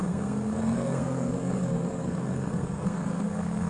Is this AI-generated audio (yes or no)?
yes